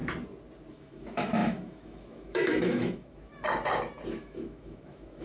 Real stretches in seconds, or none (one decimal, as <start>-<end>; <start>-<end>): 0.0-0.7; 3.3-4.2